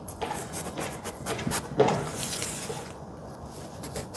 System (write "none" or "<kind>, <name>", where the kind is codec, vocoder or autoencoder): vocoder, Vocos